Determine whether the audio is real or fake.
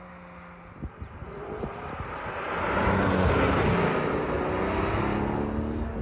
real